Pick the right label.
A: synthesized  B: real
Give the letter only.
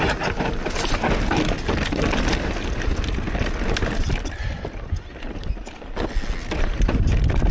B